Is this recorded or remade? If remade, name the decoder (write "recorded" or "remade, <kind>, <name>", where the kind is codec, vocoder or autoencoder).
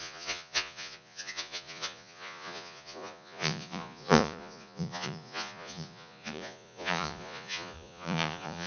remade, vocoder, Vocos